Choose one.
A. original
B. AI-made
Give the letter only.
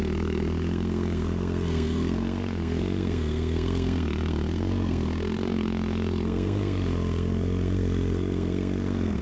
B